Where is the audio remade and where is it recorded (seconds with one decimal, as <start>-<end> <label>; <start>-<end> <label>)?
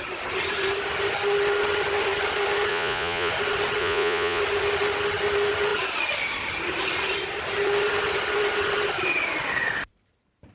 0.0-2.7 recorded; 2.7-3.3 remade; 3.3-3.8 recorded; 3.8-4.4 remade; 4.4-10.5 recorded